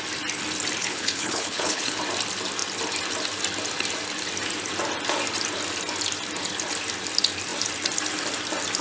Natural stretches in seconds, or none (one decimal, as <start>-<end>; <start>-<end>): 0.0-0.8; 2.0-8.8